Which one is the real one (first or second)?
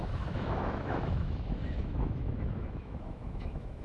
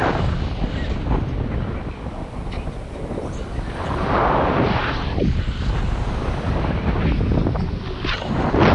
second